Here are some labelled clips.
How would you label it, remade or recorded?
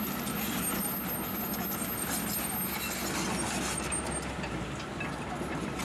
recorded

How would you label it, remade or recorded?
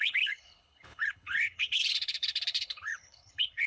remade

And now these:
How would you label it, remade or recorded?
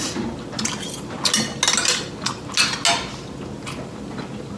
recorded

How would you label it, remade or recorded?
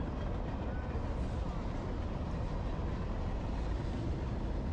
recorded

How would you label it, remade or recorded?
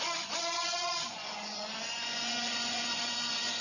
remade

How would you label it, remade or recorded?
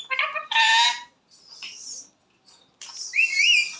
recorded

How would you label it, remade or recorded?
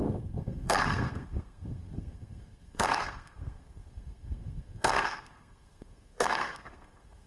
remade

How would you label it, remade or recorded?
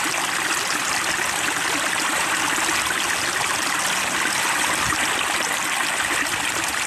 recorded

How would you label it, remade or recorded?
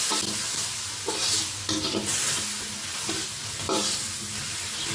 recorded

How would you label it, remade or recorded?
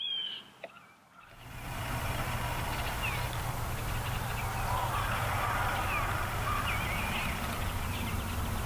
recorded